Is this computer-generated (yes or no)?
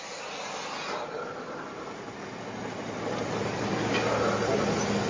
no